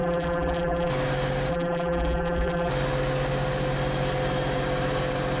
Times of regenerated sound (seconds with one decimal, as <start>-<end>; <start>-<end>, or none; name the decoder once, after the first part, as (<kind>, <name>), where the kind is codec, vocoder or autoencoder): 0.0-0.9 (vocoder, BigVGAN v2); 1.5-2.7